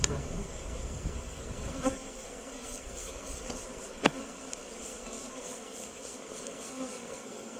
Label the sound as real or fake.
fake